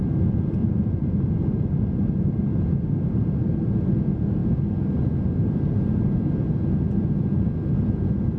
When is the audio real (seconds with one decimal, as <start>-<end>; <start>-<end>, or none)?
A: 0.0-0.6; 1.7-8.4